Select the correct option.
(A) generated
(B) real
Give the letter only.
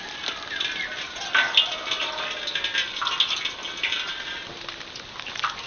B